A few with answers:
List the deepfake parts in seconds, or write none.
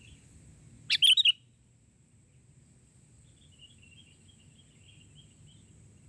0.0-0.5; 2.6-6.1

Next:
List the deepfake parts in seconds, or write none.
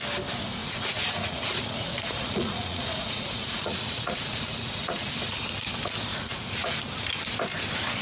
0.6-5.1; 6.1-6.8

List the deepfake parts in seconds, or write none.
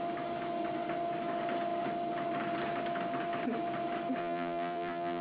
4.2-5.2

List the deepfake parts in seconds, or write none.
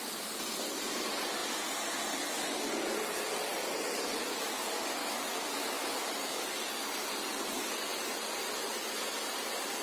5.0-6.4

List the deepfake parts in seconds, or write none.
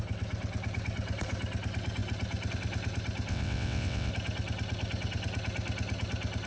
3.3-4.1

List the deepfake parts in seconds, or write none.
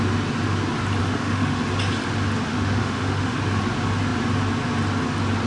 1.0-1.6; 2.5-3.4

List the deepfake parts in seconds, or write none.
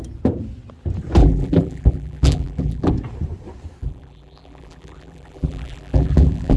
1.2-2.9; 3.8-6.6